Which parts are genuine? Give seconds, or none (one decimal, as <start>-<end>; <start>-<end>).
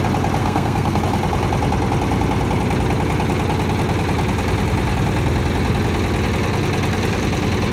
0.0-0.4; 1.0-7.7